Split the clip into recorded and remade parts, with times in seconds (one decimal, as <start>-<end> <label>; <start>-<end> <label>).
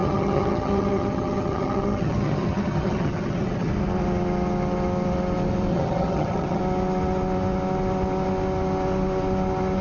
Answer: 0.0-3.7 remade; 3.7-5.7 recorded; 5.7-6.6 remade; 6.6-9.8 recorded